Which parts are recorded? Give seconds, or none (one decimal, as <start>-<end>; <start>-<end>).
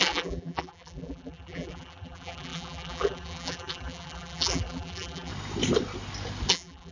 5.3-6.5